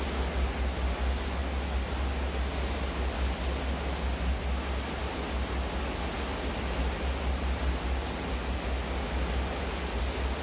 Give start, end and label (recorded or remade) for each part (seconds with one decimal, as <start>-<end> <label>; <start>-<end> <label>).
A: 0.0-10.4 recorded